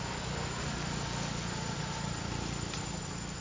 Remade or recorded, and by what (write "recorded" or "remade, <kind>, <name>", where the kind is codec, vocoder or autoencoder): recorded